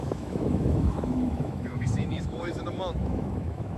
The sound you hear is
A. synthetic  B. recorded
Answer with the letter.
A